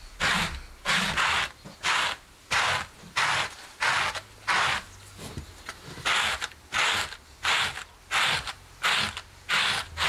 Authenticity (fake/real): real